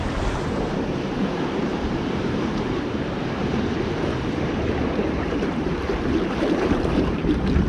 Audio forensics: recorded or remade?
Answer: remade